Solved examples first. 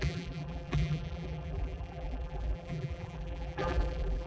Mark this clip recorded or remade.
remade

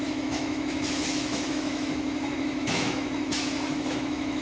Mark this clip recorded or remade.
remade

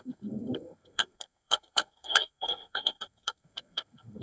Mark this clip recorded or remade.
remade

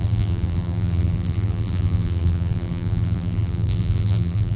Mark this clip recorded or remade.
remade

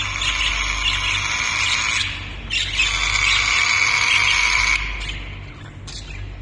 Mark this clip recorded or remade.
recorded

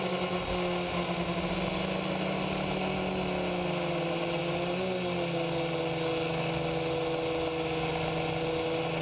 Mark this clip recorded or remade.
recorded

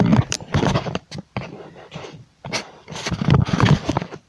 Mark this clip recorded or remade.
remade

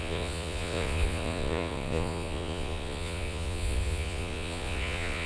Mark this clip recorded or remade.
remade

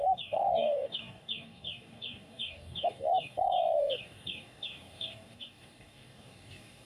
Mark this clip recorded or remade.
remade